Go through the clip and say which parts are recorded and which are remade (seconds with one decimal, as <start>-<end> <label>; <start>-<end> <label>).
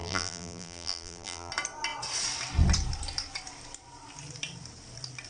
0.0-1.5 remade; 1.5-5.3 recorded